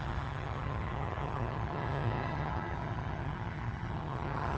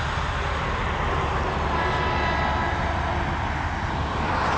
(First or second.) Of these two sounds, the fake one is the first